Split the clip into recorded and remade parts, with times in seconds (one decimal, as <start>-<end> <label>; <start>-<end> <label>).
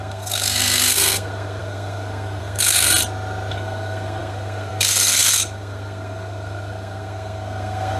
0.0-2.9 remade; 2.9-3.5 recorded; 3.5-8.0 remade